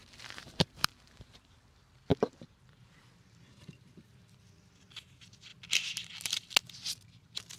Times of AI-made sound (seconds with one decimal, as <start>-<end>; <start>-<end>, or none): 0.0-1.6; 2.1-3.0